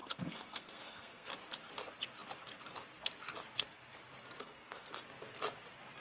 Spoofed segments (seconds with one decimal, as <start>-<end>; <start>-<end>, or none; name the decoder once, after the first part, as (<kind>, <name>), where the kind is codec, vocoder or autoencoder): 0.0-1.3 (codec, SNAC); 4.4-5.0